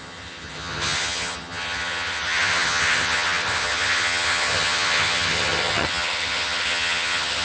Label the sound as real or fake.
fake